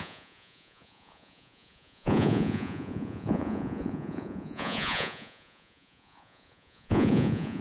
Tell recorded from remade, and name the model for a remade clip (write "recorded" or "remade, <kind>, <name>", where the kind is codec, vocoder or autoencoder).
remade, vocoder, Vocos